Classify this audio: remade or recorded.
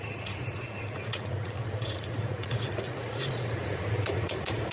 remade